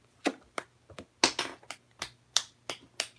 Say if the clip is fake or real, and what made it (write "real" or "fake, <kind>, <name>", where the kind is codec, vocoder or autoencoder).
real